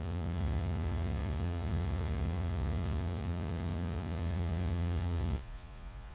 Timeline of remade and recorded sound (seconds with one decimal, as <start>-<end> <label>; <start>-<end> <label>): 0.0-6.1 remade